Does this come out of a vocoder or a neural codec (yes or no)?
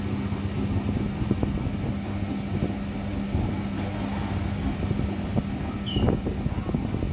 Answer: no